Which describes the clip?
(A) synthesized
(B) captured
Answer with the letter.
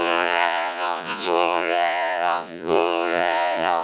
A